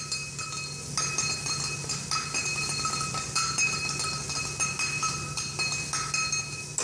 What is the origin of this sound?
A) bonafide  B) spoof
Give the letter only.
A